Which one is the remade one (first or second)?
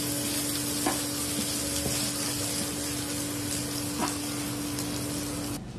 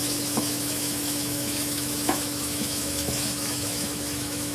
second